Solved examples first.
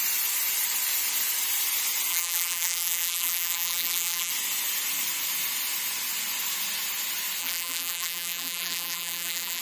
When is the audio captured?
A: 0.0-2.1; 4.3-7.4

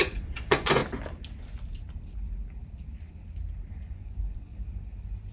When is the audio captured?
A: 0.8-3.7; 4.5-5.3

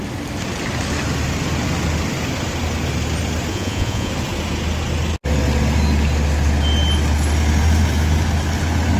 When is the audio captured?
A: 0.0-3.5; 4.1-9.0

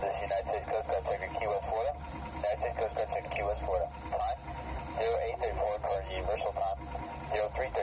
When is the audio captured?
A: 0.0-7.8

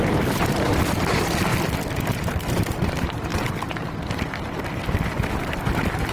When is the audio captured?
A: 1.5-2.1; 3.3-5.4